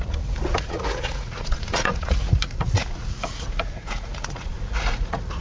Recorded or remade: remade